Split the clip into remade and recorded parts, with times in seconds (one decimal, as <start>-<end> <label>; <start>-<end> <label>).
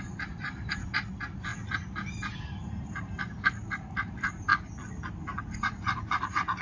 0.0-1.5 remade; 1.5-2.4 recorded; 2.4-4.5 remade; 4.5-5.2 recorded; 5.2-6.6 remade